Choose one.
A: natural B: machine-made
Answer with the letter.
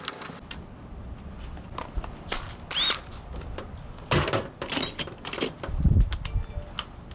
A